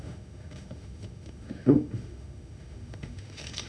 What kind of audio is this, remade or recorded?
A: remade